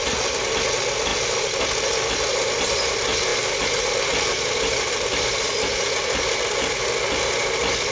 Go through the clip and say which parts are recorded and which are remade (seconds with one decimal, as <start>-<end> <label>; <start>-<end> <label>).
0.0-1.1 recorded; 1.1-2.9 remade; 2.9-3.3 recorded; 3.3-6.3 remade; 6.3-7.9 recorded